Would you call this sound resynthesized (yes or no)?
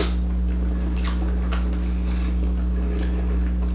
no